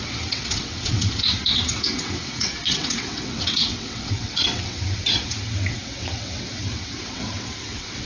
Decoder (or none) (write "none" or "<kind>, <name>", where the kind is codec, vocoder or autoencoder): vocoder, WaveNeXt